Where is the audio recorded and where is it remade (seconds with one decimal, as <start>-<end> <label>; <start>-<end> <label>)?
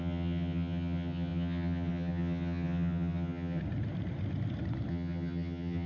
0.0-3.6 remade; 3.6-4.9 recorded; 4.9-5.9 remade